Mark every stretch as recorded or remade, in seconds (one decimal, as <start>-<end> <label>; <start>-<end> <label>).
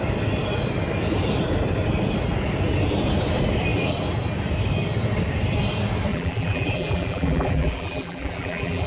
0.0-6.1 recorded; 6.1-8.9 remade